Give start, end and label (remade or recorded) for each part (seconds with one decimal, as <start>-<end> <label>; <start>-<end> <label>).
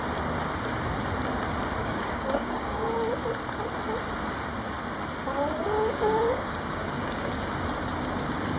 0.0-1.8 recorded; 1.8-2.9 remade; 2.9-5.6 recorded; 5.6-7.3 remade; 7.3-8.6 recorded